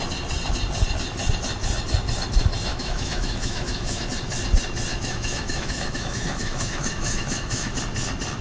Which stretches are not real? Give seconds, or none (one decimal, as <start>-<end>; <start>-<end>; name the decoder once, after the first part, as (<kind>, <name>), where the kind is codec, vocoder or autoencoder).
2.7-4.1 (autoencoder, DAC-VAE); 4.9-7.8